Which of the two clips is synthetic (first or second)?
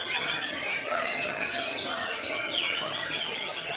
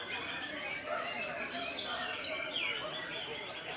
first